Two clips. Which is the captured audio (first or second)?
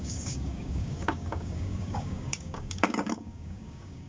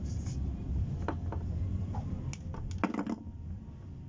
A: second